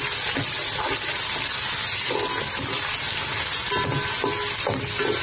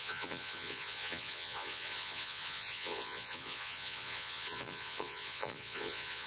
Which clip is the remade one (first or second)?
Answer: second